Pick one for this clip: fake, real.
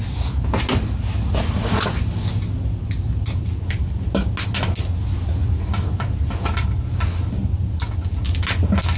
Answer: real